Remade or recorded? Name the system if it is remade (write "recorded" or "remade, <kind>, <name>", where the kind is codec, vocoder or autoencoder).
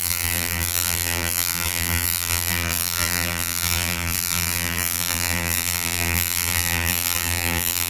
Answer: remade, vocoder, BigVGAN v2